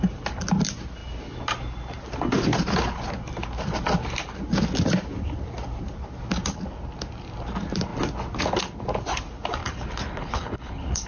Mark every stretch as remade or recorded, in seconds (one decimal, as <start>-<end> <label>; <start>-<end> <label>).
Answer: 0.0-9.6 recorded; 9.6-11.1 remade